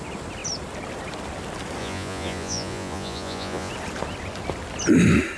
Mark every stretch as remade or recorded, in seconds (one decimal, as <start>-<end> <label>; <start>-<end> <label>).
0.0-1.8 recorded; 1.8-3.7 remade; 3.7-5.4 recorded